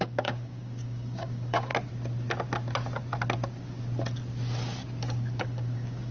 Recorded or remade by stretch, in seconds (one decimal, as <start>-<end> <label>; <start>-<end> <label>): 0.0-1.7 remade; 1.7-5.4 recorded; 5.4-6.1 remade